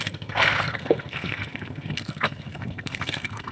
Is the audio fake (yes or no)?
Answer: yes